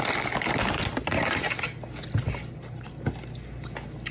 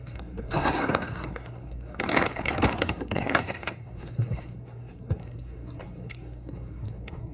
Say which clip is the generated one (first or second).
second